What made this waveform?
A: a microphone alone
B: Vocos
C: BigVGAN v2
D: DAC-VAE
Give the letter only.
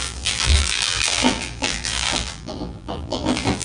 C